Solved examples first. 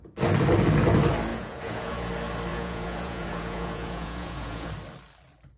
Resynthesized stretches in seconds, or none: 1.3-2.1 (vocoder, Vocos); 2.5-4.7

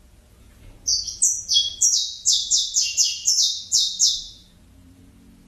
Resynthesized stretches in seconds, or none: 0.0-5.5 (vocoder, Vocos)

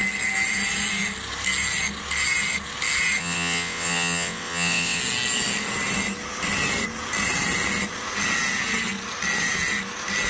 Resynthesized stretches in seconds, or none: 3.2-5.0 (vocoder, WaveNeXt)

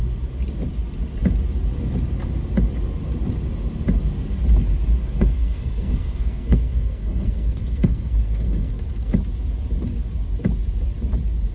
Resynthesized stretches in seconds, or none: 5.0-9.1 (codec, SNAC)